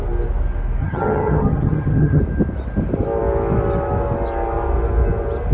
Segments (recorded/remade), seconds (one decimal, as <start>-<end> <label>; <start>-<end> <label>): 0.0-0.8 recorded; 0.8-2.2 remade; 2.2-5.5 recorded